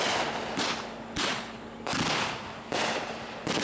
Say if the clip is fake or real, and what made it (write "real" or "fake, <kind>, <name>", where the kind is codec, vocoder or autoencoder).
real